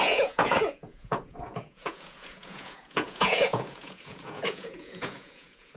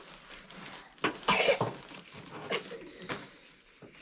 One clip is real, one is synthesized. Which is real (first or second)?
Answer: second